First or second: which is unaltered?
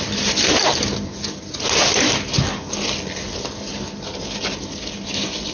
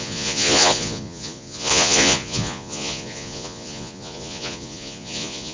first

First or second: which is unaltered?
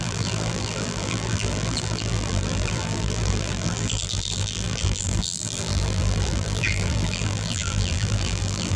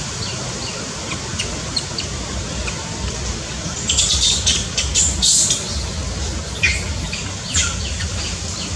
second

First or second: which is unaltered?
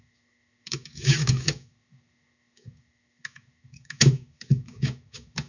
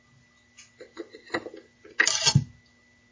second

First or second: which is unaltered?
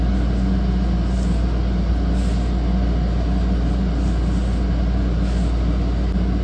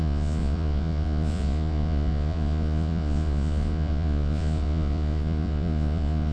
first